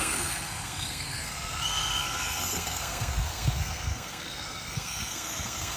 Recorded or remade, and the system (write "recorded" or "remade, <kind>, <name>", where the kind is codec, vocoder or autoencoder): remade, codec, SNAC